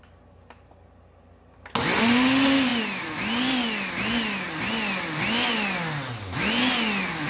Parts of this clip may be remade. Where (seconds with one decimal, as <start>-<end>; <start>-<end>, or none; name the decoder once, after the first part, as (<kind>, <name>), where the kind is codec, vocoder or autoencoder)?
none